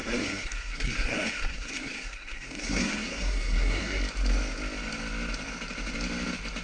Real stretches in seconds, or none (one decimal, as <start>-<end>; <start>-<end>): 4.0-6.6